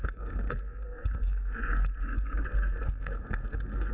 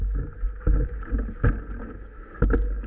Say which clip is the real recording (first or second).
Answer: second